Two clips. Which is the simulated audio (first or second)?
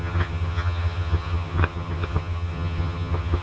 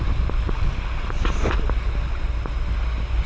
first